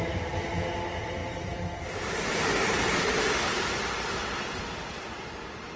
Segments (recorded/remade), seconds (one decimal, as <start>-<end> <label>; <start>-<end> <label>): 0.0-5.8 recorded